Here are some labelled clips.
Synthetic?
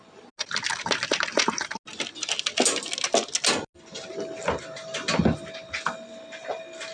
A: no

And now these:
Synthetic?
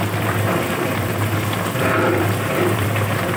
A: yes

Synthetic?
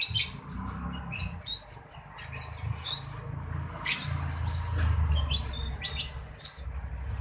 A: no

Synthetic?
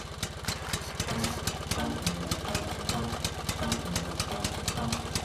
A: no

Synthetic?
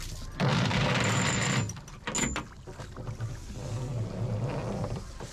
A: no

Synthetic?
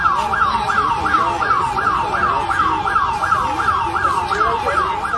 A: no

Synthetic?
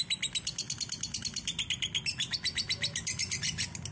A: no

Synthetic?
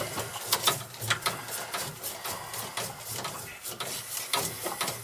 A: no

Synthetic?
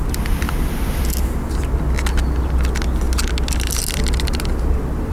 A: no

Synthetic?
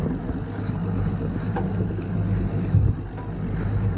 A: no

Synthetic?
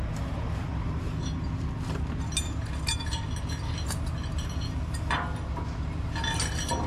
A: no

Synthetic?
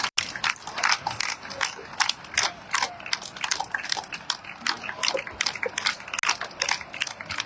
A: no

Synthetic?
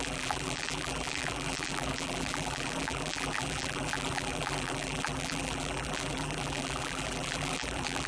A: yes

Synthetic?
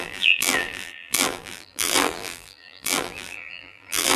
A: yes